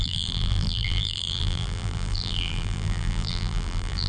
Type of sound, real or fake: fake